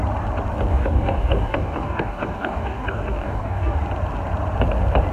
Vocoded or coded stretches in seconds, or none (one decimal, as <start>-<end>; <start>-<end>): 0.7-3.8